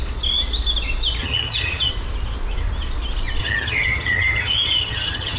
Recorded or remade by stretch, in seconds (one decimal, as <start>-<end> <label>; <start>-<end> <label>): 0.0-1.2 recorded; 1.2-1.9 remade; 1.9-3.4 recorded; 3.4-5.4 remade